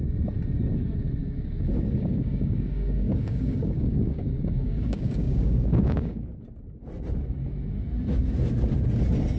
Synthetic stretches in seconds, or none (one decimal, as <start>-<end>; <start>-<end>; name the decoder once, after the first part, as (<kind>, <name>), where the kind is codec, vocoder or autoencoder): 1.2-6.3 (codec, DAC)